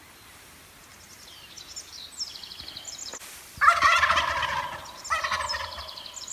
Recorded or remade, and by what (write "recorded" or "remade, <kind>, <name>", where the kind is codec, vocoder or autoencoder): recorded